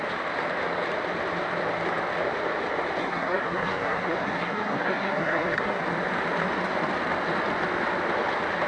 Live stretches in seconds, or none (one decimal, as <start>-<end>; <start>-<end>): 0.0-3.0; 5.8-8.7